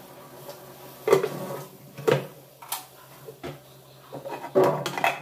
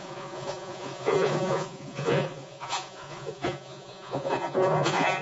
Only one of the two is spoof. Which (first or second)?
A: second